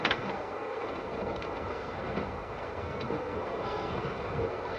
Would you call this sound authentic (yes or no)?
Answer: no